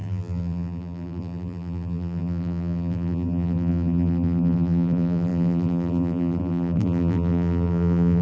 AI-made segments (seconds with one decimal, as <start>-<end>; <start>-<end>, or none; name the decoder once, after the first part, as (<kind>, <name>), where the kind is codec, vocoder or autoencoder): 0.0-8.2 (vocoder, BigVGAN v2)

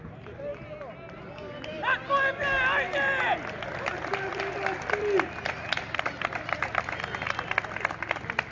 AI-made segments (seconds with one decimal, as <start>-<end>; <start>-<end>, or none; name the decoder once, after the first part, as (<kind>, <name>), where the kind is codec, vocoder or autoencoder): none

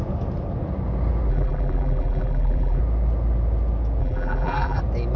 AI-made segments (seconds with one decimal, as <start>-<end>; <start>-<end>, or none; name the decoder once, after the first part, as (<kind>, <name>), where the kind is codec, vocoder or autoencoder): 1.3-2.8 (vocoder, BigVGAN v2); 4.0-4.8